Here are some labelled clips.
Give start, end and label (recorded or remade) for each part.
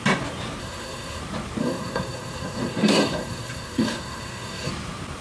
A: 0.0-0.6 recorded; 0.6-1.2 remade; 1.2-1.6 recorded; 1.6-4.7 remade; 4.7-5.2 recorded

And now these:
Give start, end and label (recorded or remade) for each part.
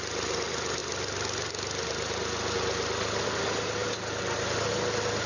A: 0.0-5.3 recorded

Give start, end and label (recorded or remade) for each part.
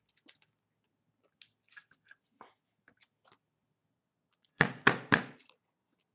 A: 0.0-3.9 recorded; 3.9-6.1 remade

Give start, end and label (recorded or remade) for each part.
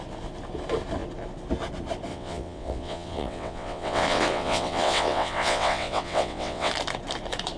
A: 0.0-2.1 recorded; 2.1-6.7 remade; 6.7-7.6 recorded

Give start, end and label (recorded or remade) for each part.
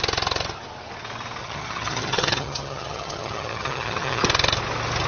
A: 0.0-1.4 recorded; 1.4-4.2 remade; 4.2-5.1 recorded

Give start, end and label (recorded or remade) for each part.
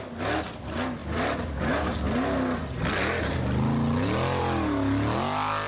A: 0.0-5.7 recorded